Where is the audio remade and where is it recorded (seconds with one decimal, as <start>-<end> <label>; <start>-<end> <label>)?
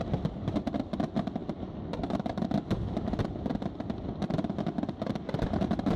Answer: 0.0-6.0 recorded